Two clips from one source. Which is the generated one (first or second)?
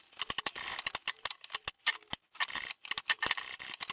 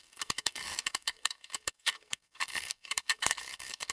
second